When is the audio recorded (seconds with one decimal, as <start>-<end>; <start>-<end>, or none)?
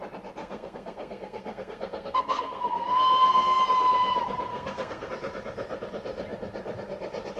0.0-0.4; 3.6-4.5; 5.1-7.4